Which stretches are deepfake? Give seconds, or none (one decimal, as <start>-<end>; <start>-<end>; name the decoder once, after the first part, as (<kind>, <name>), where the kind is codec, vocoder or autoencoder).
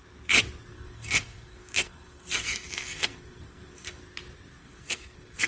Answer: 0.7-4.0 (codec, SNAC); 4.6-5.5